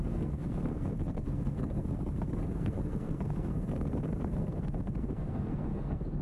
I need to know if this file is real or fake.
fake